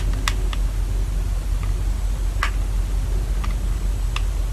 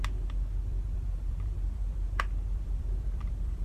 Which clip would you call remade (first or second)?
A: second